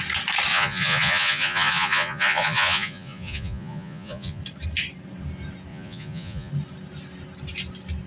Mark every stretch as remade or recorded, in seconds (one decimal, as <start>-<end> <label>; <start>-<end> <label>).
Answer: 0.0-0.5 recorded; 0.5-4.4 remade; 4.4-5.7 recorded; 5.7-6.5 remade; 6.5-8.1 recorded